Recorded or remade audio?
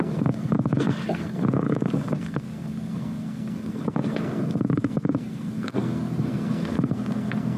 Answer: remade